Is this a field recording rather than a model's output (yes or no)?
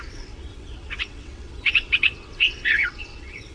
no